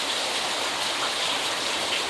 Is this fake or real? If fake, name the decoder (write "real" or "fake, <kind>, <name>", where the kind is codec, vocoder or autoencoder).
real